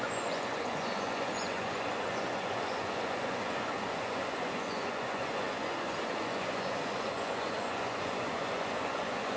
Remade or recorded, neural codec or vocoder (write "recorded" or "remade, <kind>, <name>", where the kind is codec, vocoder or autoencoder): remade, vocoder, Vocos